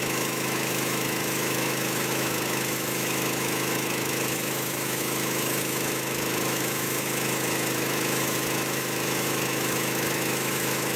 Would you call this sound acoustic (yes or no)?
no